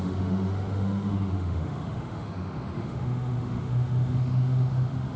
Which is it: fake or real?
fake